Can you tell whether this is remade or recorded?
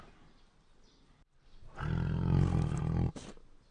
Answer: recorded